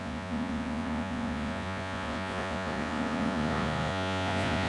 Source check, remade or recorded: remade